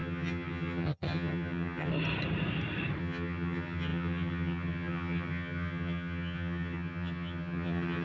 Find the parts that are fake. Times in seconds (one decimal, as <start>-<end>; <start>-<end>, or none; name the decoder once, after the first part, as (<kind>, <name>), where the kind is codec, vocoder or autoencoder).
0.0-1.9 (vocoder, HiFi-GAN); 3.0-8.0